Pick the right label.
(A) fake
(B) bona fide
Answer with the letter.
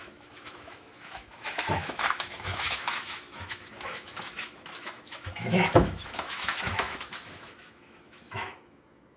A